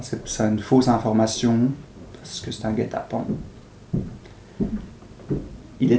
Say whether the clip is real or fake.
real